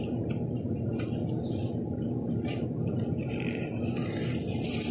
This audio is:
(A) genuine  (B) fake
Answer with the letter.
A